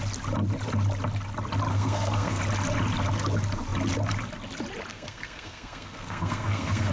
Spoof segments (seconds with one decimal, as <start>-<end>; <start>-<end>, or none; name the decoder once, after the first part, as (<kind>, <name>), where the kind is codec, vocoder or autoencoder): 1.7-2.4 (codec, SNAC); 4.9-6.9